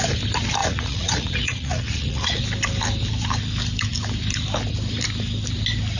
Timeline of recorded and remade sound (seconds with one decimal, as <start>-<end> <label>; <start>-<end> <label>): 0.0-0.6 recorded; 0.6-2.4 remade; 2.4-6.0 recorded